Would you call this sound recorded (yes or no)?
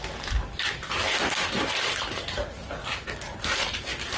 yes